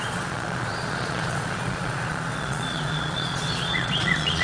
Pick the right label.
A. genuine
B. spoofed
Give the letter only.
B